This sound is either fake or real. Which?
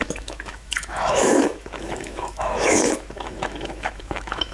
fake